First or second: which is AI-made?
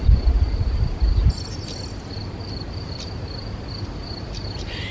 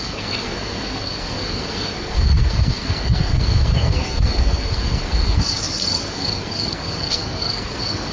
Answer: second